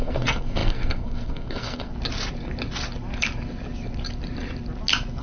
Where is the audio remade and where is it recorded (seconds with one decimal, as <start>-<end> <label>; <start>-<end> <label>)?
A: 0.0-1.9 remade; 1.9-5.2 recorded